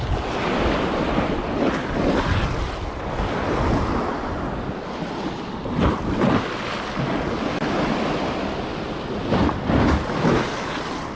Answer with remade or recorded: recorded